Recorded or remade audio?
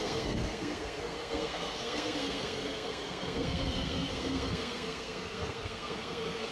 remade